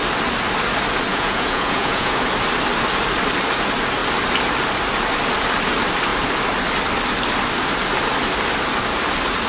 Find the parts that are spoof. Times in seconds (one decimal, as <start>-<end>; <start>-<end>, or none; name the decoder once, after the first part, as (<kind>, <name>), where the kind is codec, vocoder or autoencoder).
1.1-2.2 (vocoder, Vocos)